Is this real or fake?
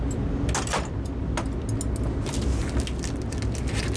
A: real